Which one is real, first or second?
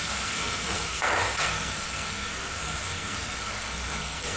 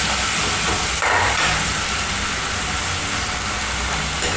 second